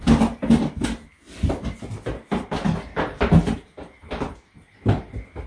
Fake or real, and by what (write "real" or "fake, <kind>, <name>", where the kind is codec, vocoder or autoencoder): real